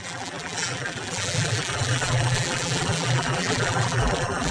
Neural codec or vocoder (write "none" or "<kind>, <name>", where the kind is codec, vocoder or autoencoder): vocoder, BigVGAN v2